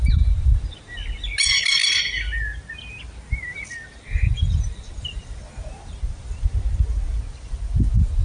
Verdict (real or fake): real